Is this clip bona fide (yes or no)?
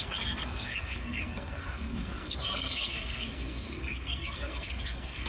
no